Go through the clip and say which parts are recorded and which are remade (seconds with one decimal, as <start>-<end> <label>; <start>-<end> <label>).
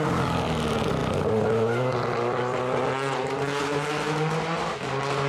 0.0-5.3 recorded